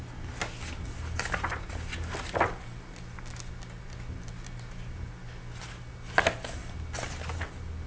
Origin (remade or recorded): recorded